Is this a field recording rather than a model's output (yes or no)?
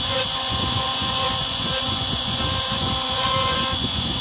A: no